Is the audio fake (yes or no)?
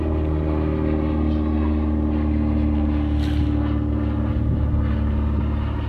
no